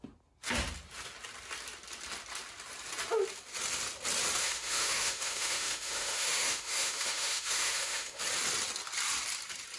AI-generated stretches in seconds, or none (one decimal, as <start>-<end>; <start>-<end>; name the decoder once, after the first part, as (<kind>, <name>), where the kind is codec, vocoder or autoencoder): 4.4-8.2 (autoencoder, DAC-VAE)